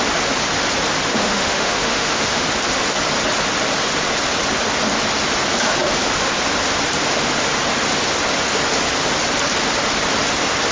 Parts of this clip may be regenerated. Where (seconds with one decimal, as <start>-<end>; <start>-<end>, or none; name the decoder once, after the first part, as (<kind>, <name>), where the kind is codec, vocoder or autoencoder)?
1.1-2.4 (autoencoder, DAC-VAE)